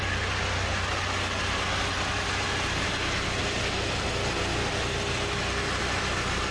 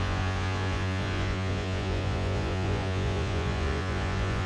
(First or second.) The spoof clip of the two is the second